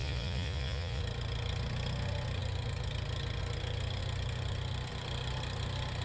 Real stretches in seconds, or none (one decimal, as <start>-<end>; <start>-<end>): 1.0-6.0